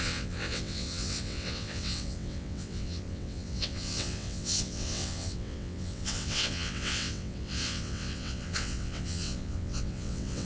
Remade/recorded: remade